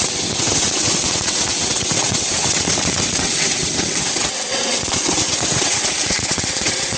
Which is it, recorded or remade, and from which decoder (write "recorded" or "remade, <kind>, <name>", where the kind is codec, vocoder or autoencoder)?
remade, vocoder, WaveNeXt